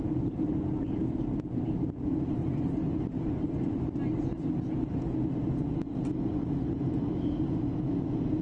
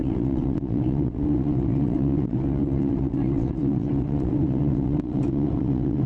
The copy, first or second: second